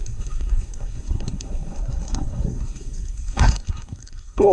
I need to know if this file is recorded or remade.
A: remade